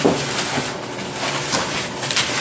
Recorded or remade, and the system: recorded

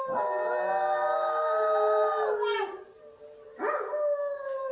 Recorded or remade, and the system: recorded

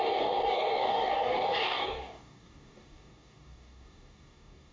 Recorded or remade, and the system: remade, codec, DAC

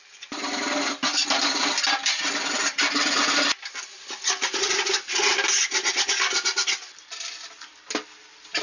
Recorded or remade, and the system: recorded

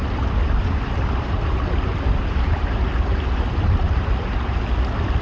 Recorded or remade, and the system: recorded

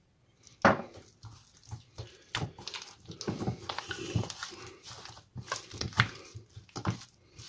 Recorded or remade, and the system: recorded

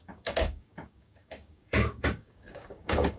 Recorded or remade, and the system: remade, codec, DAC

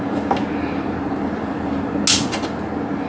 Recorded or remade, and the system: recorded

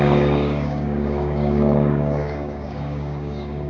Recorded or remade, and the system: remade, codec, DAC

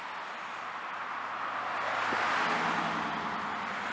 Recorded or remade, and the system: recorded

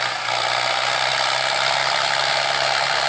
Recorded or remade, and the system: recorded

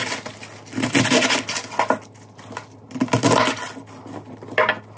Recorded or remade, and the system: recorded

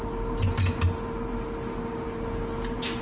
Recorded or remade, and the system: recorded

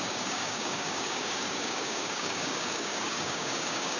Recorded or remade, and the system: remade, codec, DAC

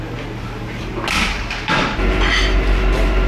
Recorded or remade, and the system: recorded